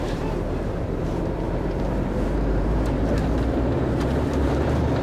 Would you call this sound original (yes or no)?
no